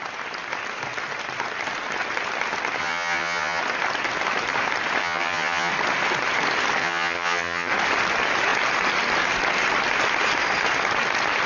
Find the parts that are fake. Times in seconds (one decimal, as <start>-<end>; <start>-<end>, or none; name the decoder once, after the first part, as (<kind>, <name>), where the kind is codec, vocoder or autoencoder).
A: 2.8-3.6 (vocoder, HiFi-GAN); 5.0-5.7; 6.8-7.7